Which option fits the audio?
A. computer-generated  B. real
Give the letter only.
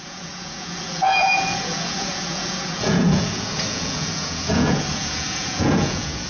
A